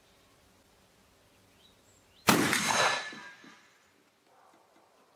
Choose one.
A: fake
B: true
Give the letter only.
B